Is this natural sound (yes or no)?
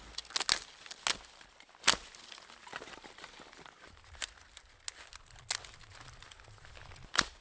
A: yes